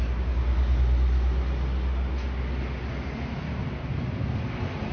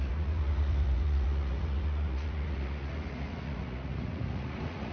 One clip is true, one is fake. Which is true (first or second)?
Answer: first